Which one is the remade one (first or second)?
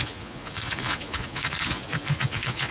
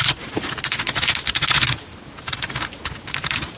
first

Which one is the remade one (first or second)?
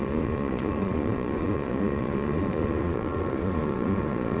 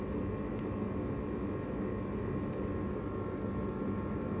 first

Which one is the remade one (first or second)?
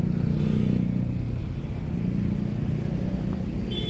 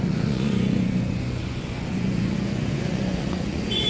second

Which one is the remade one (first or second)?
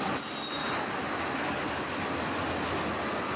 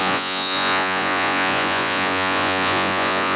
second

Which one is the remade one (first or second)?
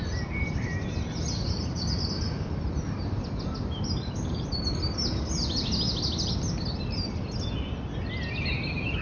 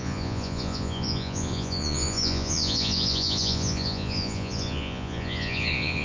second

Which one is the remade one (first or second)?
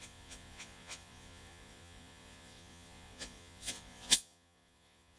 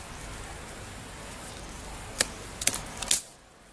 first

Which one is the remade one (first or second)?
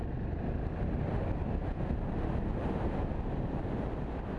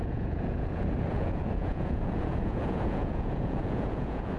second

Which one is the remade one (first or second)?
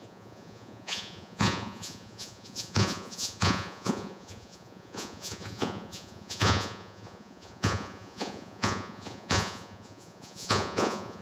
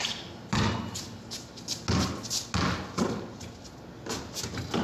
first